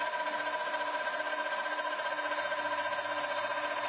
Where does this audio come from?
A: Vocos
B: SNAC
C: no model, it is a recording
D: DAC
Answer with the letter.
C